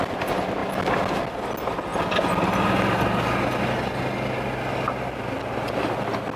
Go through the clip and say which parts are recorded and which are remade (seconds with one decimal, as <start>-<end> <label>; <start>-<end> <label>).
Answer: 0.0-6.4 recorded